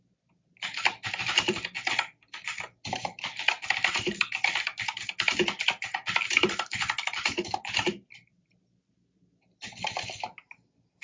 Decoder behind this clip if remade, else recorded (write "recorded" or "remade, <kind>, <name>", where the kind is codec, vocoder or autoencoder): recorded